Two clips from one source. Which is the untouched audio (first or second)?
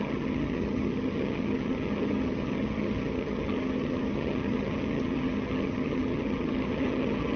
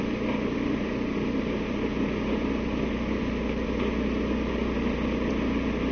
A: second